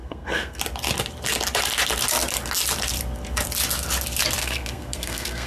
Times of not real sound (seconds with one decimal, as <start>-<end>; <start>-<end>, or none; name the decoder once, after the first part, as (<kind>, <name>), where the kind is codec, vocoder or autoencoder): 0.0-0.6 (codec, SNAC); 4.4-5.5